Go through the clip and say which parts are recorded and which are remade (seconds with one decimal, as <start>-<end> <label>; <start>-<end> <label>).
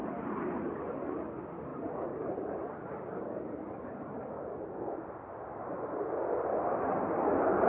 0.0-0.7 remade; 0.7-1.7 recorded; 1.7-4.7 remade; 4.7-7.7 recorded